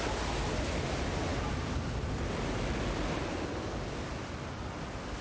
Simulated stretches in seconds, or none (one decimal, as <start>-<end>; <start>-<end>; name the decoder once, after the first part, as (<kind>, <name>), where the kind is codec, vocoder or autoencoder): none